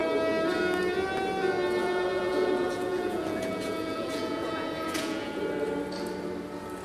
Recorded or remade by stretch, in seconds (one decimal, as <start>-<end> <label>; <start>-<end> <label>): 0.0-1.8 recorded; 1.8-5.4 remade; 5.4-6.8 recorded